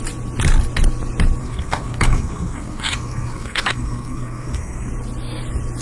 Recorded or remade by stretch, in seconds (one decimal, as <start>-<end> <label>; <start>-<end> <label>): 0.0-1.4 recorded; 1.4-4.9 remade; 4.9-5.8 recorded